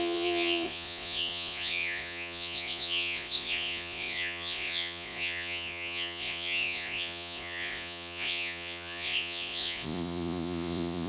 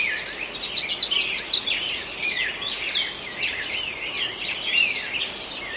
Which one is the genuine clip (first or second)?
second